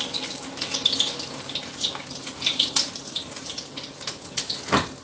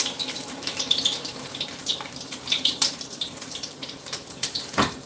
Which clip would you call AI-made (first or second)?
second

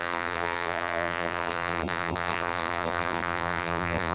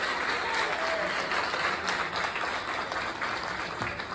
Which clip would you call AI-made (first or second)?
first